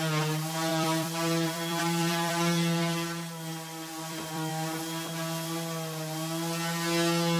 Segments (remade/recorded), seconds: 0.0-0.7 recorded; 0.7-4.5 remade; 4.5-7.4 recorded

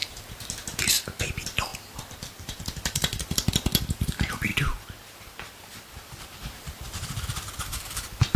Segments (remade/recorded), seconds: 0.0-0.8 recorded; 0.8-4.5 remade; 4.5-5.9 recorded; 5.9-8.4 remade